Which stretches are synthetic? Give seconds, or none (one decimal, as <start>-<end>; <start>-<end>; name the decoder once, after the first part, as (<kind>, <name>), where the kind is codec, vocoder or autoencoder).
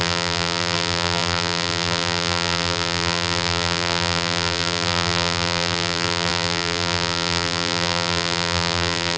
0.0-9.2 (vocoder, BigVGAN v2)